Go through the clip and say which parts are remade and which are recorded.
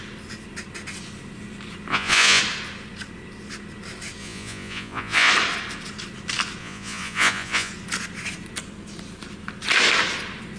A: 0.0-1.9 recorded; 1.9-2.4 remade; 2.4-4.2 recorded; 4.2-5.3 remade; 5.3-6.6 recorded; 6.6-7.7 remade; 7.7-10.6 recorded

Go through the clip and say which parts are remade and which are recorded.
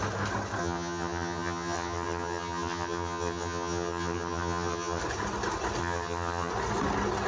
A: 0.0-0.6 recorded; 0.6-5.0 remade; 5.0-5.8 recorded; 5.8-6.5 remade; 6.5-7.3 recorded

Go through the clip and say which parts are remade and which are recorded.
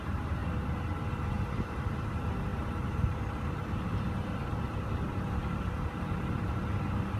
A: 0.0-0.4 remade; 0.4-1.3 recorded; 1.3-7.2 remade